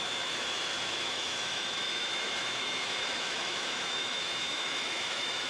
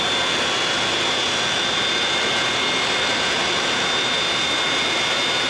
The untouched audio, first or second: second